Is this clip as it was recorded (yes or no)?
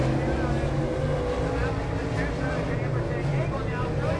yes